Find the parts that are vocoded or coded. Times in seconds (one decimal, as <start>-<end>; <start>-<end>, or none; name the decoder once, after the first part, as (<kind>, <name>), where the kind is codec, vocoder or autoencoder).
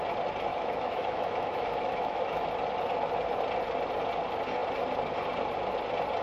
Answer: 0.5-2.5 (autoencoder, DAC-VAE)